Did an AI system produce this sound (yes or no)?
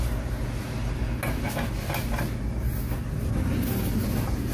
no